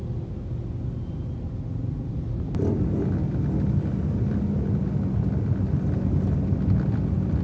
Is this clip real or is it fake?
real